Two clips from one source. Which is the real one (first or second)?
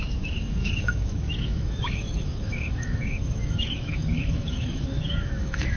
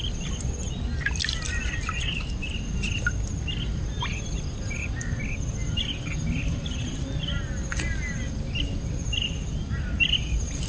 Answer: second